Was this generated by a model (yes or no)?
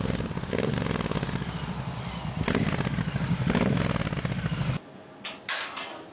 no